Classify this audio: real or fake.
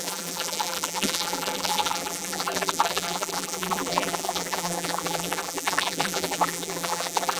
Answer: fake